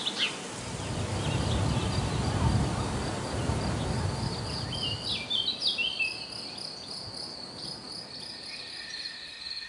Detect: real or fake real